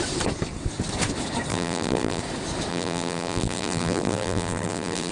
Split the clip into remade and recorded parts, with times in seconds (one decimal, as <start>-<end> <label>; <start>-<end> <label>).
0.0-1.5 recorded; 1.5-2.2 remade; 2.2-2.7 recorded; 2.7-5.1 remade